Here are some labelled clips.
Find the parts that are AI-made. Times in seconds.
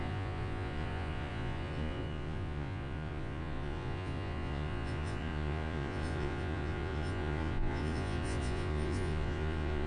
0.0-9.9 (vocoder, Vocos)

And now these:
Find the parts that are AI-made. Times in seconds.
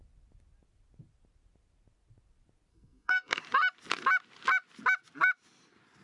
2.7-3.4 (codec, SNAC)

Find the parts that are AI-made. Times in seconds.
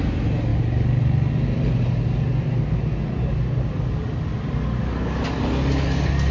4.8-5.4 (codec, DAC)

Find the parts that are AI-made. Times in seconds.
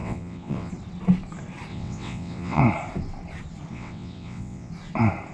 0.0-0.7 (vocoder, WaveNeXt); 1.7-2.6; 3.7-4.7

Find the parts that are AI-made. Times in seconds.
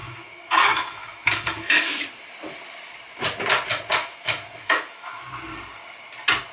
0.0-1.9 (autoencoder, DAC-VAE); 4.0-5.2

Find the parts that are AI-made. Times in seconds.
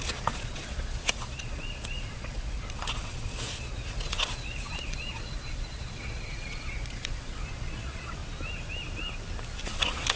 0.0-8.2 (vocoder, Vocos); 9.6-10.2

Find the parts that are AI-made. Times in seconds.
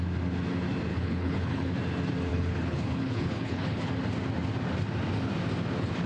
0.9-1.7 (codec, HILCodec); 2.3-3.9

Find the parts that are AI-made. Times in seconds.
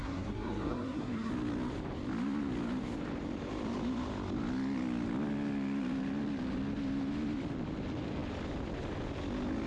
0.0-1.3 (codec, SNAC)